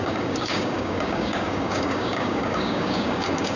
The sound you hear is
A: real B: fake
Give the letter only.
B